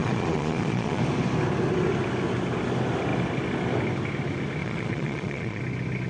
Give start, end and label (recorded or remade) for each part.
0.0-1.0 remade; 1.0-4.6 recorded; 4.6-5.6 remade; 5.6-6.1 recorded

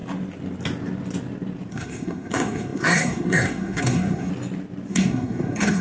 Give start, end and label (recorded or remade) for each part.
0.0-1.7 recorded; 1.7-4.3 remade; 4.3-4.9 recorded; 4.9-5.8 remade

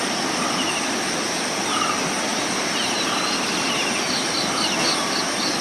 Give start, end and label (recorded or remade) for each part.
0.0-2.3 recorded; 2.3-3.1 remade; 3.1-5.6 recorded

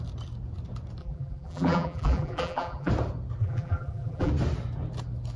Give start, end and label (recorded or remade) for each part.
0.0-1.0 recorded; 1.0-2.9 remade; 2.9-3.4 recorded; 3.4-4.3 remade; 4.3-5.4 recorded

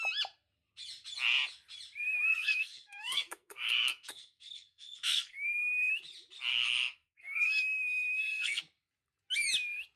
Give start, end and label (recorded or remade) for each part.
0.0-2.3 recorded; 2.3-5.9 remade; 5.9-6.5 recorded; 6.5-8.6 remade; 8.6-10.0 recorded